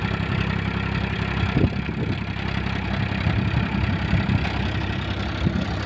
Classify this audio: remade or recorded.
recorded